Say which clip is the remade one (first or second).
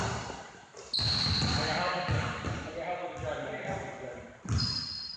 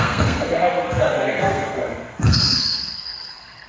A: second